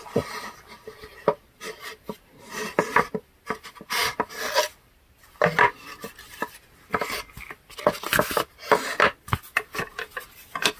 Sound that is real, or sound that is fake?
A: real